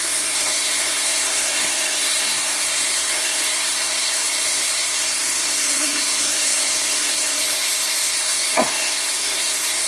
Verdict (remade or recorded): remade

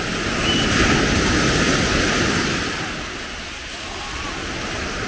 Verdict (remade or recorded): recorded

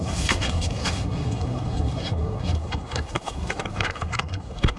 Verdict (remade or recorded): remade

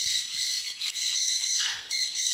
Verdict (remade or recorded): remade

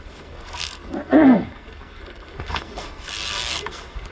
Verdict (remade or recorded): remade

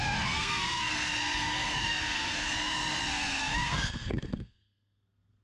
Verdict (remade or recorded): remade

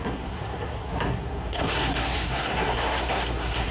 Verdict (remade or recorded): remade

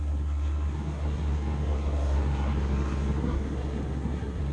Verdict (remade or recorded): remade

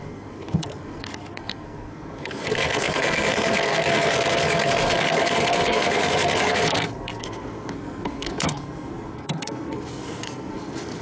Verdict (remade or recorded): remade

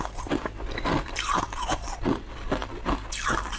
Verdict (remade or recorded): recorded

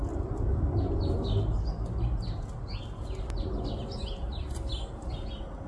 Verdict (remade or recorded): recorded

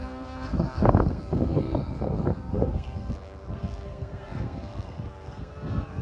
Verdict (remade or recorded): remade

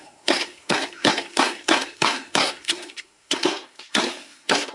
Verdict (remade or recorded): remade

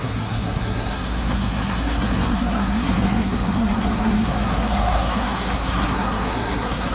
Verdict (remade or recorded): remade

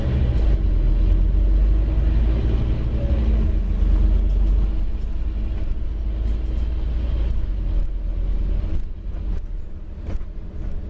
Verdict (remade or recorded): recorded